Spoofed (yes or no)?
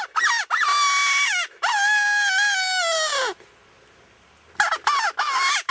no